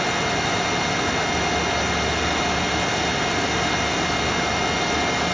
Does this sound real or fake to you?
real